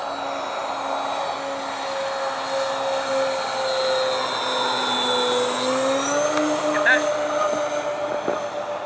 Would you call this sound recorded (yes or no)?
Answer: yes